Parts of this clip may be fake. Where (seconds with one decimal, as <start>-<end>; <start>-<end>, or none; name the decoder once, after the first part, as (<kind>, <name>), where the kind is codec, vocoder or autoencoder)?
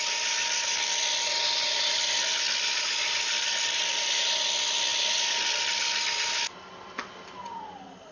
none